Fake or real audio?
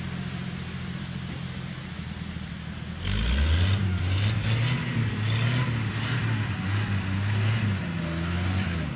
real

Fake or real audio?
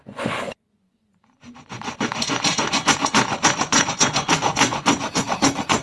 fake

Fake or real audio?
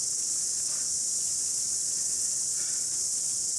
real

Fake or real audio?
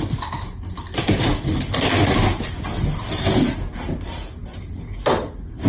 real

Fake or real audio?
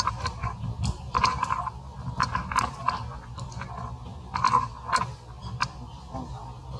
real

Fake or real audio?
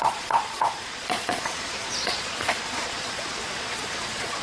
fake